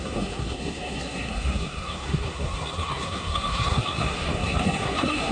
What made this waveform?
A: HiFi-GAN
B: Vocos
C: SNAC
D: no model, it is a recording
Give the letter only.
C